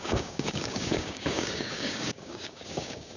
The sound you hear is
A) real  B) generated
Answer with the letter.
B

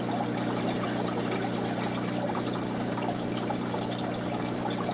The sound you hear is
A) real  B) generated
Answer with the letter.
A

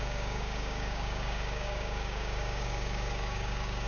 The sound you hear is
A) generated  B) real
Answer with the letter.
A